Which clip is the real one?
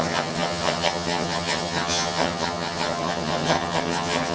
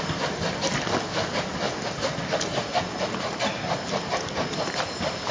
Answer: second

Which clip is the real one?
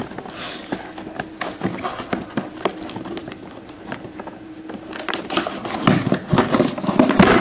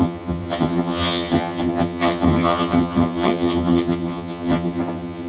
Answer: first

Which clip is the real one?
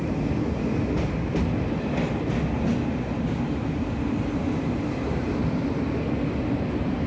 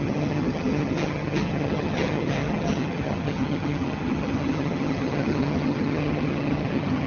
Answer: first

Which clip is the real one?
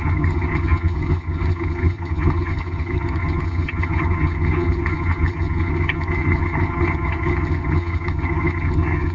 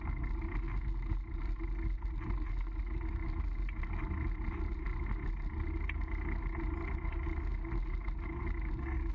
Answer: second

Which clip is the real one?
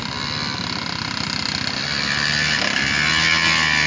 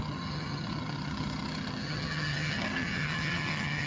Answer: first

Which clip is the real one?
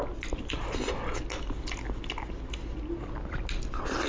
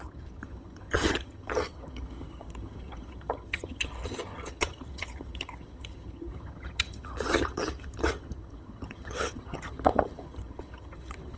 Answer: first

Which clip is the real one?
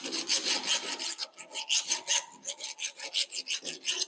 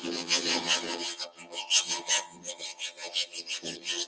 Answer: first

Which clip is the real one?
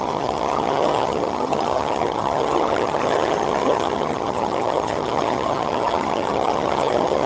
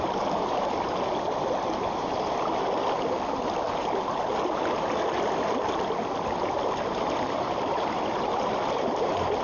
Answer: second